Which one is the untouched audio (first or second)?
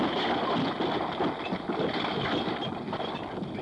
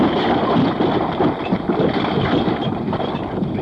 first